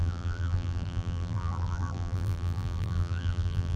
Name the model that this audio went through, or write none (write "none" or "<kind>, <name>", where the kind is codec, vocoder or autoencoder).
vocoder, BigVGAN v2